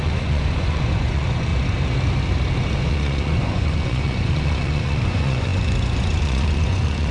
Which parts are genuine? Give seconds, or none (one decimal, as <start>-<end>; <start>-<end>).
1.5-2.9